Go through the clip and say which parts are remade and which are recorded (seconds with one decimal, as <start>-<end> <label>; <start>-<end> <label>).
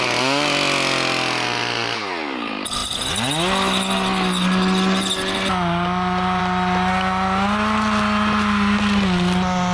0.0-9.7 recorded